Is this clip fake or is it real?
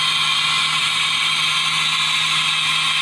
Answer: real